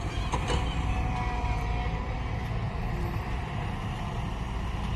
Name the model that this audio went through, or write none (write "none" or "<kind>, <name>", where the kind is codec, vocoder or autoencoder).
none